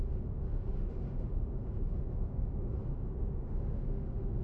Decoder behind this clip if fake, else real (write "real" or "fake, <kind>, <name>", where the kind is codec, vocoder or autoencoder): fake, autoencoder, DAC-VAE